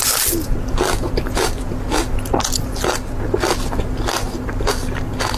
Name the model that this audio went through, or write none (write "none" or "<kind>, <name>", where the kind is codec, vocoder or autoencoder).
none